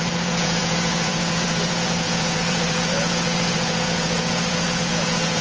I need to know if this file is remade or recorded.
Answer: remade